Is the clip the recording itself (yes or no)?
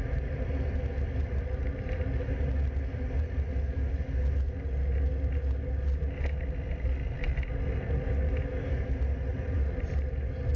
yes